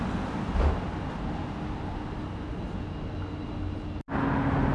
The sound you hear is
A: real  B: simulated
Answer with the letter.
A